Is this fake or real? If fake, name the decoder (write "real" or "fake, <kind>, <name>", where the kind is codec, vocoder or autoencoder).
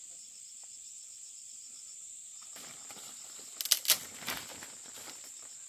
real